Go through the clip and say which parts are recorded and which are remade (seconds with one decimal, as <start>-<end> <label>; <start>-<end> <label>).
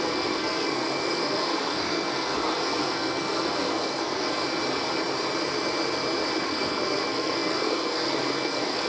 0.0-4.4 remade; 4.4-6.4 recorded; 6.4-8.9 remade